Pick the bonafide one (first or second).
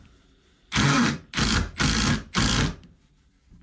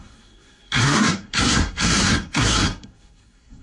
first